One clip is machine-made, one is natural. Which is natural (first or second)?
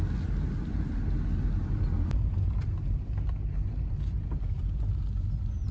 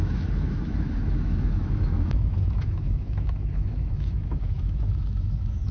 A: first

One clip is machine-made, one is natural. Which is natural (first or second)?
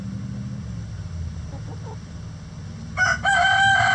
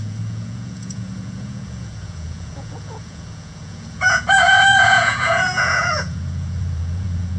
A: first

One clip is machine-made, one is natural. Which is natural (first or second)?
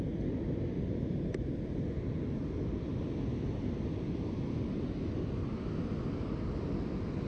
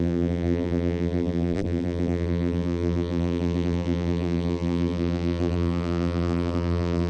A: first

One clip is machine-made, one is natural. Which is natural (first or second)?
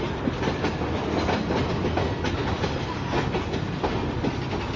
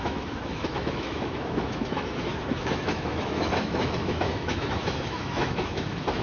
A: first